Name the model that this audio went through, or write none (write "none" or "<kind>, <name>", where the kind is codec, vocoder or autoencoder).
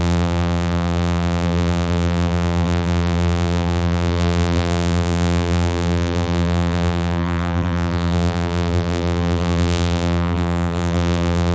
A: vocoder, BigVGAN v2